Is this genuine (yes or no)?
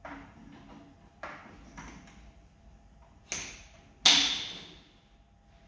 yes